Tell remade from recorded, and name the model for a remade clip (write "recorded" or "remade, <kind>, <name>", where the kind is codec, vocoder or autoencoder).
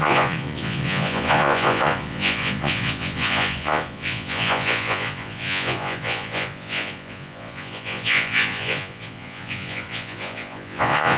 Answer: remade, vocoder, Vocos